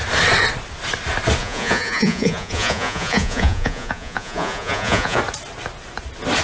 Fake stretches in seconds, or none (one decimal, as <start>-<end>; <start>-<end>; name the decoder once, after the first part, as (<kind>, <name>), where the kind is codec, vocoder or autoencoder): 1.4-5.2 (vocoder, Vocos)